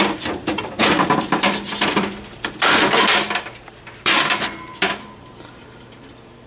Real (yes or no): no